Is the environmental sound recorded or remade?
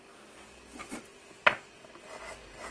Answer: recorded